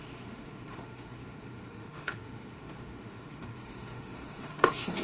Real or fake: fake